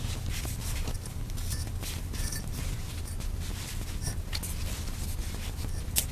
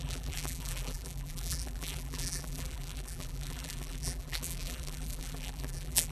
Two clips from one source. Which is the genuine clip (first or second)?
first